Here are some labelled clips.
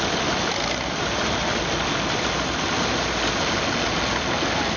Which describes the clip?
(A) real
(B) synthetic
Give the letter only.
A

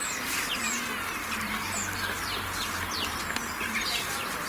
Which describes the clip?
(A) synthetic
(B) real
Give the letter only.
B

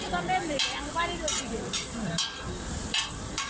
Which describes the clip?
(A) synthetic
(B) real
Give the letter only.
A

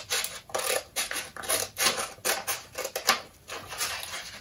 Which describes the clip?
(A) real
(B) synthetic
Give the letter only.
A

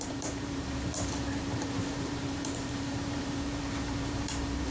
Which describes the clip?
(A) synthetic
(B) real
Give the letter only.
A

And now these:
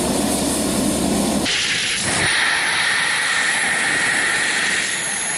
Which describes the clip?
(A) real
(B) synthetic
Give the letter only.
A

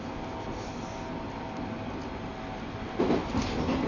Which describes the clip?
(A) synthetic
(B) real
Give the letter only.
B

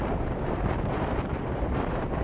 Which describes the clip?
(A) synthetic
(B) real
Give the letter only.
A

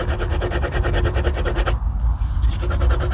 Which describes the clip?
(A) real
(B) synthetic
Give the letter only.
A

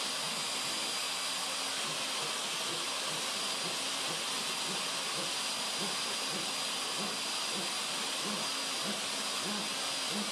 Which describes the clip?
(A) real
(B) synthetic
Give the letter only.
A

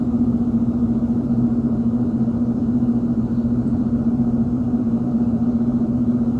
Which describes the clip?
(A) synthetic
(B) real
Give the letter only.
A